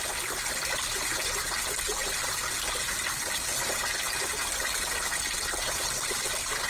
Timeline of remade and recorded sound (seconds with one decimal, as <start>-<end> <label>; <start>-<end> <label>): 0.0-6.7 recorded